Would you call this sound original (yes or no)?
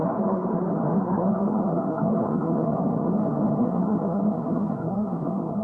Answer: no